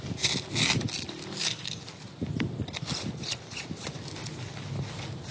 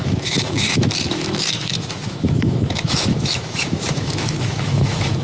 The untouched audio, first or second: first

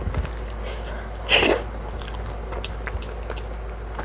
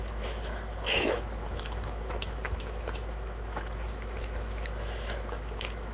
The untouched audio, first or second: first